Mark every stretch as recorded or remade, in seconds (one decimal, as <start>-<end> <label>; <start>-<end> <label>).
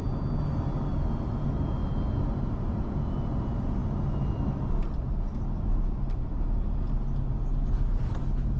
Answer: 0.0-8.6 recorded